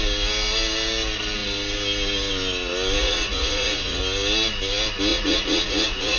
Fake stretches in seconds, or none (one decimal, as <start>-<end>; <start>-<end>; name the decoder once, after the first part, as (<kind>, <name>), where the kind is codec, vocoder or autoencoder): 3.0-4.0 (vocoder, Vocos); 5.1-6.2